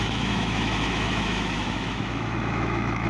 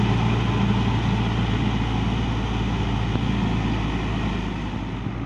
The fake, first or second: first